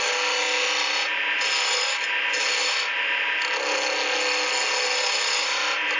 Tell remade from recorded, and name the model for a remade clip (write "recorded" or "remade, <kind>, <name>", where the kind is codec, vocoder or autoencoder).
recorded